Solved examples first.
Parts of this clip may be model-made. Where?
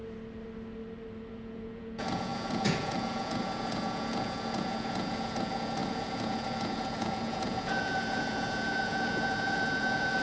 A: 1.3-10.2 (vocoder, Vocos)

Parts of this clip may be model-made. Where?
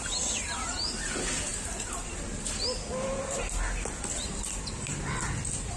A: none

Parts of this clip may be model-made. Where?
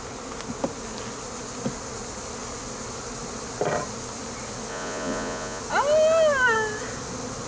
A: 4.7-5.6 (vocoder, Vocos)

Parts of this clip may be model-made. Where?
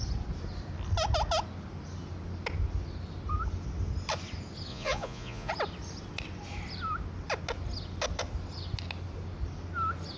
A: 4.7-5.5 (vocoder, Vocos)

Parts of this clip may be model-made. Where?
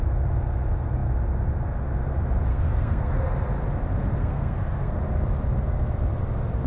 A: 2.5-3.1 (codec, SNAC); 4.2-5.0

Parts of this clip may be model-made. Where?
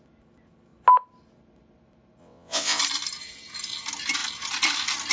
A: 2.2-2.8 (vocoder, WaveNeXt)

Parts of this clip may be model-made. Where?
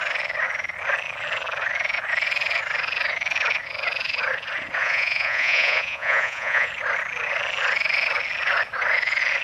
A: 4.8-6.7 (vocoder, Vocos)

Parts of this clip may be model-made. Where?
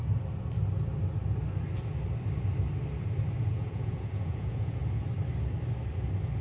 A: 3.4-4.8 (vocoder, Vocos)